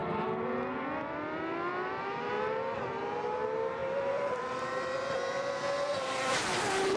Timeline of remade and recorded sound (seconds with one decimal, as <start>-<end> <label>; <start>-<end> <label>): 0.0-3.8 recorded; 3.8-7.0 remade